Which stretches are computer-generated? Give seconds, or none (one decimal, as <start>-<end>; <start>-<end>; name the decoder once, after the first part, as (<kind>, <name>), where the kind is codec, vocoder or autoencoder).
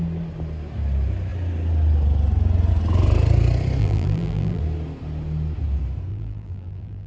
3.8-4.6 (vocoder, BigVGAN v2); 6.1-7.1